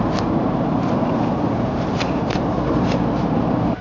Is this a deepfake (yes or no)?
yes